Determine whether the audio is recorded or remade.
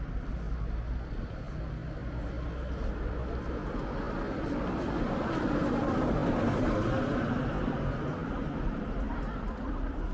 recorded